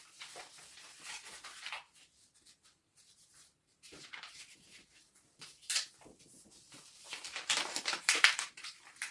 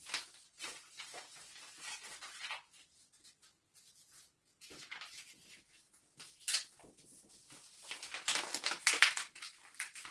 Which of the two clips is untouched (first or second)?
second